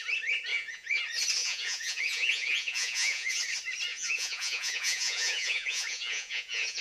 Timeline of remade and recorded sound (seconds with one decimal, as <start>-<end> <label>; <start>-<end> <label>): 0.0-0.5 recorded; 0.5-1.0 remade; 1.0-1.4 recorded; 1.4-3.4 remade; 3.4-3.9 recorded; 3.9-6.8 remade

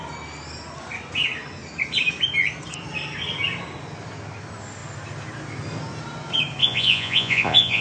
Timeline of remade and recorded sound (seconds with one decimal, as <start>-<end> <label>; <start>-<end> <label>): 0.0-6.6 recorded; 6.6-7.8 remade

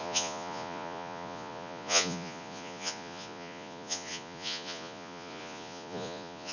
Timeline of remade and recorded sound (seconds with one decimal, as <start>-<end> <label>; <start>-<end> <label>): 0.0-6.5 remade

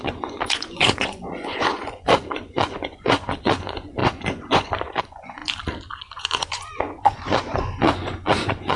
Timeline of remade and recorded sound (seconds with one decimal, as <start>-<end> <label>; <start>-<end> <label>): 0.0-5.4 remade; 5.4-6.0 recorded; 6.0-8.8 remade

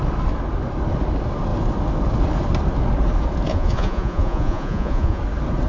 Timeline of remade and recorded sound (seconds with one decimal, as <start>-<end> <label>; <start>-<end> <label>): 0.0-3.5 recorded; 3.5-5.2 remade; 5.2-5.7 recorded

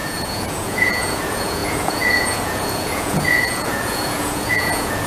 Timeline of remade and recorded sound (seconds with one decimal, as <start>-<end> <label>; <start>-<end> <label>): 0.0-5.1 remade